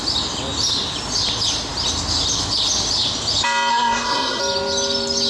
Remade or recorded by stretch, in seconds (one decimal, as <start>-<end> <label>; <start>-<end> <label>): 0.0-3.7 recorded; 3.7-4.4 remade; 4.4-5.3 recorded